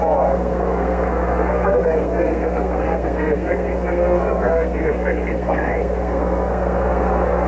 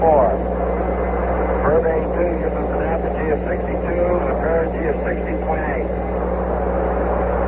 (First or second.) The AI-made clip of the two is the first